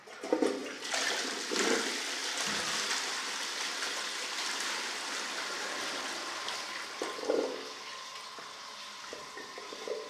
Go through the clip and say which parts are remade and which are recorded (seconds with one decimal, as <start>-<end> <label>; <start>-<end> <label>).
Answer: 0.0-10.1 recorded